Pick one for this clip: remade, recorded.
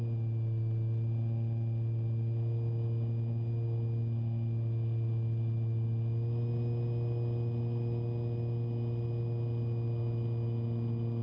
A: recorded